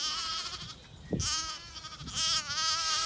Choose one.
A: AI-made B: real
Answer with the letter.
B